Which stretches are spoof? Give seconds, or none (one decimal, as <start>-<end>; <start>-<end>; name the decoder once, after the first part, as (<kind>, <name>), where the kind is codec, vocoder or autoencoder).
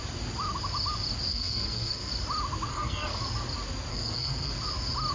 1.3-2.1 (codec, SNAC); 2.7-3.2; 3.9-4.5